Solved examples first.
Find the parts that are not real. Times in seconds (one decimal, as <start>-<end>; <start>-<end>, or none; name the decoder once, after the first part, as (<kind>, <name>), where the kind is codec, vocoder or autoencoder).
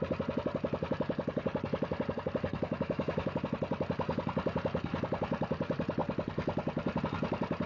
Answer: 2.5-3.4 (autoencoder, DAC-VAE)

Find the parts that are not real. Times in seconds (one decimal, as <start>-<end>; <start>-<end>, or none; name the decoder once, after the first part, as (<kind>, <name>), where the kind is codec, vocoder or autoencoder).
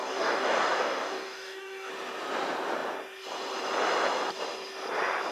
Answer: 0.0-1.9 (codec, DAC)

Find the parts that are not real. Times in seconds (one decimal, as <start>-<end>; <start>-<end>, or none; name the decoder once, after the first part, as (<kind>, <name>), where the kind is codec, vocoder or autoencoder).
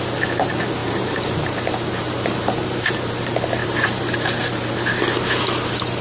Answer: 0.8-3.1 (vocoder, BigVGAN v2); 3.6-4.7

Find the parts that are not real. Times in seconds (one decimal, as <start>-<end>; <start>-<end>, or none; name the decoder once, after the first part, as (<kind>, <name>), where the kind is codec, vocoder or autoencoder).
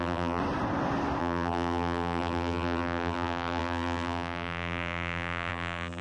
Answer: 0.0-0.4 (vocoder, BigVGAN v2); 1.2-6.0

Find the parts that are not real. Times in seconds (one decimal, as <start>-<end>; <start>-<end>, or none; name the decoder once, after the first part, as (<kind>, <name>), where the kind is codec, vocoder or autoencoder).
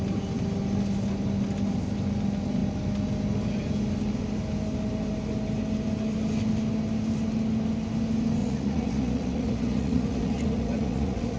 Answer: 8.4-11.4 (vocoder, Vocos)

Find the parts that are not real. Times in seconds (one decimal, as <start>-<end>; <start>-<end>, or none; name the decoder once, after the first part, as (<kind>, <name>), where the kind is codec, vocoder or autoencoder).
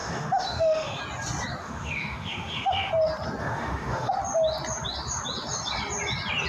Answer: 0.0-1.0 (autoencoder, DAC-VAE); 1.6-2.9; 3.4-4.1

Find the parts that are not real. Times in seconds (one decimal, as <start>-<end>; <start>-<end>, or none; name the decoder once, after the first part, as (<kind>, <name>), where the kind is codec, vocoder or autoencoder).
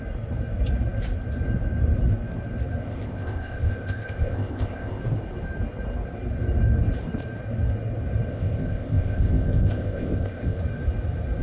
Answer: 2.8-5.0 (codec, ZipCodec); 8.3-10.6